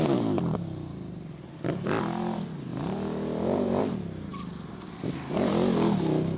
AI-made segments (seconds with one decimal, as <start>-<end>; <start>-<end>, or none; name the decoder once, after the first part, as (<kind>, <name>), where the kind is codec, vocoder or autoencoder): none